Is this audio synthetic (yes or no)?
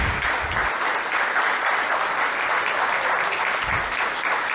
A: no